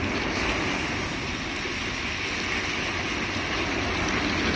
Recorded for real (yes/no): yes